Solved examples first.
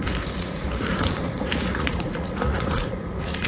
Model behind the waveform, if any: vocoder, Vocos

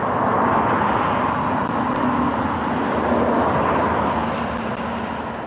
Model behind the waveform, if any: none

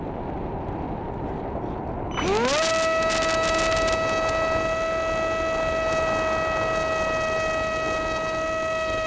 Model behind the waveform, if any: none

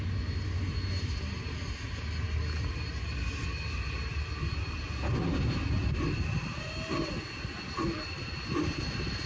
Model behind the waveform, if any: none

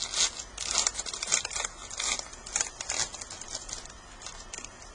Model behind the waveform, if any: none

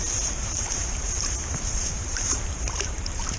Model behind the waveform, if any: vocoder, BigVGAN v2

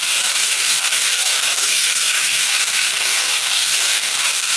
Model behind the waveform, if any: codec, DAC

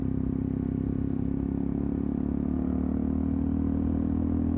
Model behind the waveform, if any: none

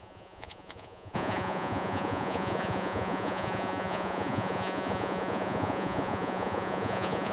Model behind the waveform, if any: vocoder, Vocos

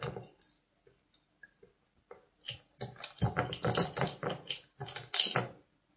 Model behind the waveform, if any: none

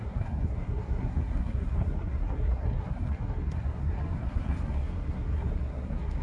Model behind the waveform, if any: codec, SNAC